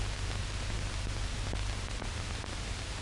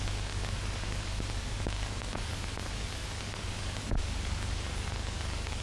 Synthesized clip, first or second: second